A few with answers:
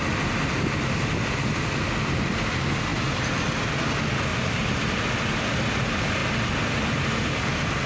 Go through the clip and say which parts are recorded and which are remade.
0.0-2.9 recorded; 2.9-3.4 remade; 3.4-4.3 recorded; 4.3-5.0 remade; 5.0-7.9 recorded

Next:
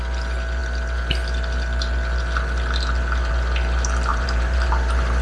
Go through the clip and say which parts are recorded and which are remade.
0.0-4.1 recorded; 4.1-4.7 remade; 4.7-5.2 recorded